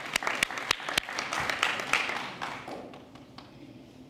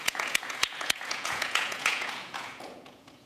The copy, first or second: second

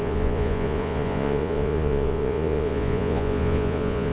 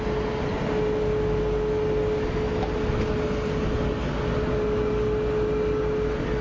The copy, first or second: first